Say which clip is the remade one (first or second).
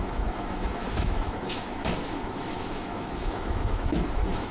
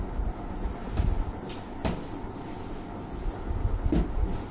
first